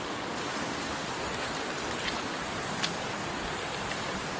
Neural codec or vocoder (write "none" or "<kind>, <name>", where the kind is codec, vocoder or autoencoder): none